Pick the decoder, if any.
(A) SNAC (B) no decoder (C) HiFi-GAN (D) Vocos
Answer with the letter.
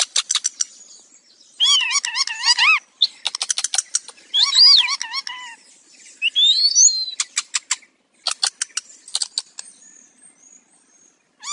B